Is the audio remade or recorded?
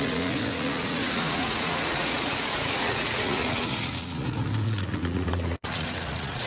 remade